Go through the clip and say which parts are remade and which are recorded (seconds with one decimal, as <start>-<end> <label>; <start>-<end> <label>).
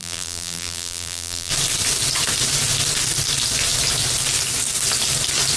0.0-1.5 remade; 1.5-5.6 recorded